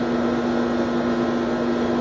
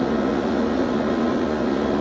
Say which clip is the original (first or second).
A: first